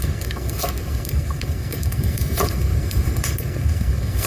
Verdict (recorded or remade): remade